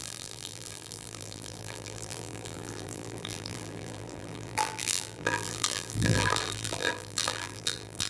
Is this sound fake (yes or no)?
yes